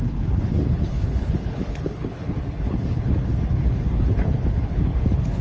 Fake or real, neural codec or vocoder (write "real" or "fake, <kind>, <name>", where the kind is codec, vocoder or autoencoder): fake, codec, HILCodec